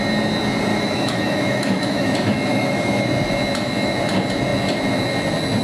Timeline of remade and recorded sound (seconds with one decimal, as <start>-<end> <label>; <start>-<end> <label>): 0.0-0.7 recorded; 0.7-2.1 remade; 2.1-2.5 recorded; 2.5-3.1 remade; 3.1-5.6 recorded